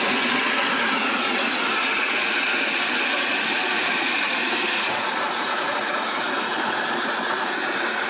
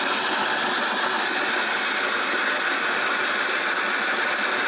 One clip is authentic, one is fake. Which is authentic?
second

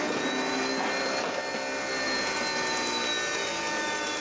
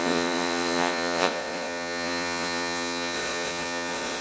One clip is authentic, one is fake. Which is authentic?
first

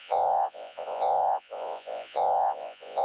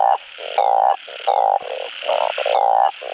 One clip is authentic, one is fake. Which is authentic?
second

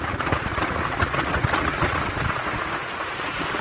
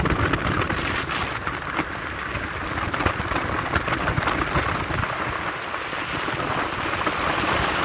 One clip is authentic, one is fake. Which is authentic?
second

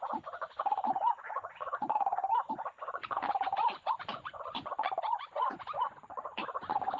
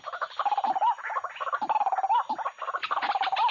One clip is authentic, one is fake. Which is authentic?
second